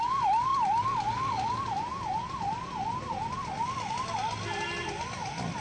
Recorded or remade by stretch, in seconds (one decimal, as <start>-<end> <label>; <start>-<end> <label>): 0.0-5.6 recorded